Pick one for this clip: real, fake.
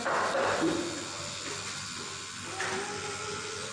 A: real